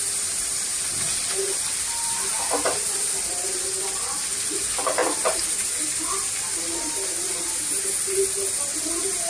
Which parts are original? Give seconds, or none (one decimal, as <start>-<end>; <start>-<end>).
0.7-1.7; 5.0-9.3